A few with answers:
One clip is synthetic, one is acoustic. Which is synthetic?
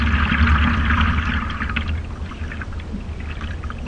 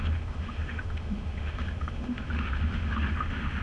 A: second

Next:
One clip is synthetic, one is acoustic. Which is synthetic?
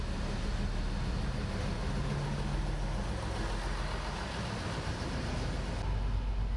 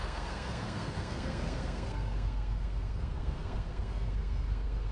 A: second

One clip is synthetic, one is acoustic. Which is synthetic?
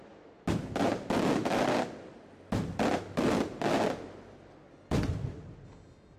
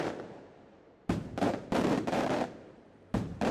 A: second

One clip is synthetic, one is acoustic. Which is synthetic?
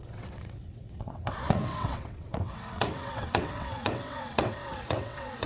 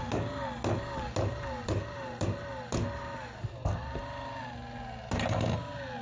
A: first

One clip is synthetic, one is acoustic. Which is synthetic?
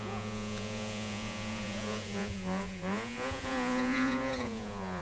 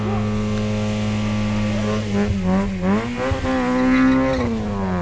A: first